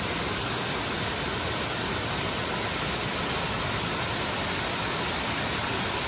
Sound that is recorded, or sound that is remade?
recorded